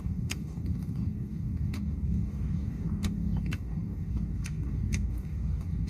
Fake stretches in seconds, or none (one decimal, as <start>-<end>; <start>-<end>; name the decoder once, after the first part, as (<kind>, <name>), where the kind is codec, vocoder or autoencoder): 0.0-5.9 (codec, DAC)

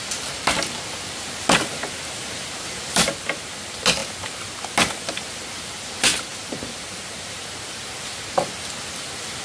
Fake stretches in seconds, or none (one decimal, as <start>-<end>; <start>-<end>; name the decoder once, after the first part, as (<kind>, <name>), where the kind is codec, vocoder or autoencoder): 6.3-7.4 (vocoder, BigVGAN v2)